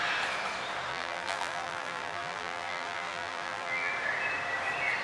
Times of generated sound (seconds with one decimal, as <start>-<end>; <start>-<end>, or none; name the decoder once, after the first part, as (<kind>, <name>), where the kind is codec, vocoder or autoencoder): 0.9-3.9 (vocoder, BigVGAN v2)